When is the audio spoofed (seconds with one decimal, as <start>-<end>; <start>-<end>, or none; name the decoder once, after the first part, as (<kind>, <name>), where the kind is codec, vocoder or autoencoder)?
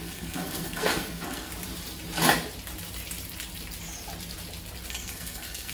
0.0-1.5 (codec, SNAC); 4.9-5.7